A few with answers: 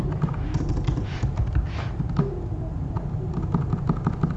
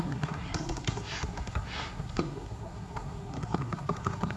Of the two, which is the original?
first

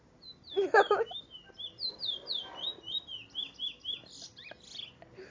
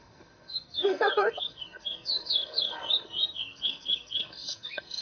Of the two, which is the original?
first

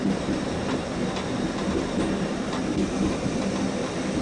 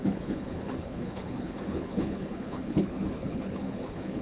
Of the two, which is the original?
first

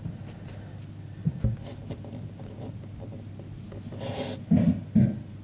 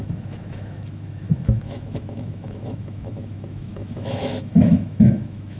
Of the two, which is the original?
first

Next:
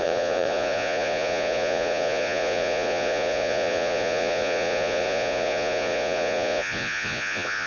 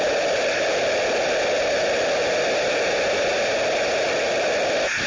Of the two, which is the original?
second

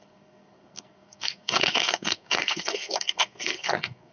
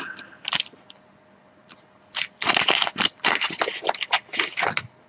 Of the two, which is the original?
second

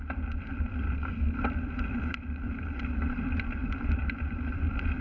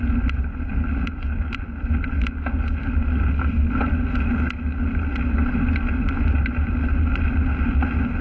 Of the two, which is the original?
second